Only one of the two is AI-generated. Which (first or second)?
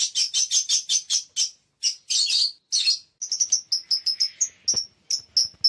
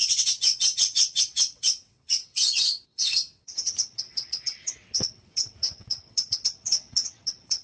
second